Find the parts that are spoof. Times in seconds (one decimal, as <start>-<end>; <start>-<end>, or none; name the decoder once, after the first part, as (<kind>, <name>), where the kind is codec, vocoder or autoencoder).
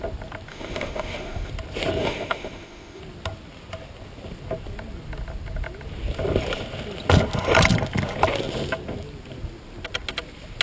0.5-1.5 (autoencoder, DAC-VAE); 2.0-3.0